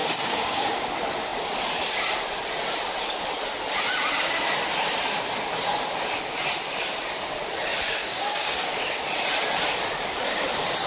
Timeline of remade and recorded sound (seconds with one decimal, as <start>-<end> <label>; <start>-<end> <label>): 0.0-0.6 remade; 0.6-8.0 recorded; 8.0-9.0 remade; 9.0-10.9 recorded